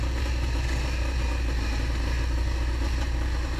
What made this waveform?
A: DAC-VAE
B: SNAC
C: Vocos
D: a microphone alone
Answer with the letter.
D